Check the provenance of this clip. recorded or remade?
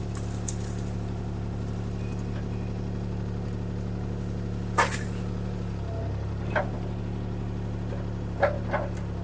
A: recorded